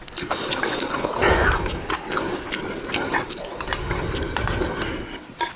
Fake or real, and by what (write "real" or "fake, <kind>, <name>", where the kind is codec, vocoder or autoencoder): real